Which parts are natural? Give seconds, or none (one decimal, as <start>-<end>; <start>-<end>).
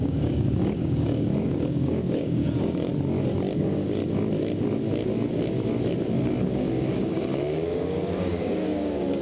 2.9-3.6; 4.0-6.4